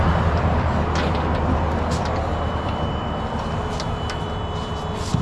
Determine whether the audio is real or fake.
real